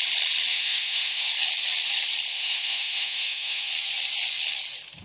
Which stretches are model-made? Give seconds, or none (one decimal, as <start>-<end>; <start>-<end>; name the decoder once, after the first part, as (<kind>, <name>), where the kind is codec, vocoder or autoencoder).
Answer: 0.5-1.3 (autoencoder, DAC-VAE); 2.3-3.7